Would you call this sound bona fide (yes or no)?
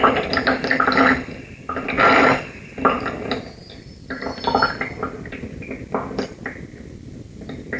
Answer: yes